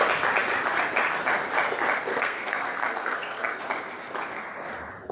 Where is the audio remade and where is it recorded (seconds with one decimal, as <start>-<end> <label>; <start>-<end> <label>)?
0.0-2.1 recorded; 2.1-3.6 remade; 3.6-5.1 recorded